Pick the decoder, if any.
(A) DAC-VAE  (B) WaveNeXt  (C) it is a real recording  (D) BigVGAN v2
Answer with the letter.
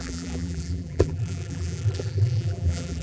D